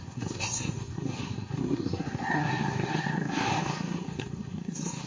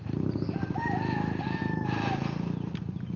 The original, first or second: second